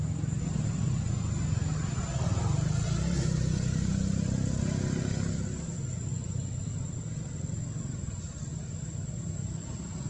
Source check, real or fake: real